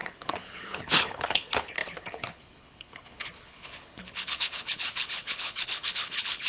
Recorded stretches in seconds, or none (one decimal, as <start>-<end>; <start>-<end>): none